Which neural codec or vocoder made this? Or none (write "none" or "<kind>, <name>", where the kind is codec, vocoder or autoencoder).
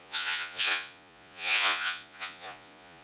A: vocoder, Vocos